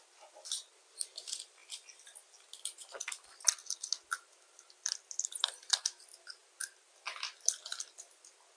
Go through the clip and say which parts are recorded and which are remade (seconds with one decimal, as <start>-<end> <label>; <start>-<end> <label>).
0.0-8.6 recorded